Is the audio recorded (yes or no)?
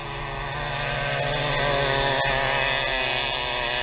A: yes